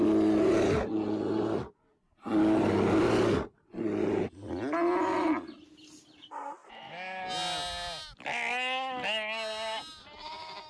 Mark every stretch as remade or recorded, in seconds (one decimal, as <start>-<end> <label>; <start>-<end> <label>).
0.0-10.7 recorded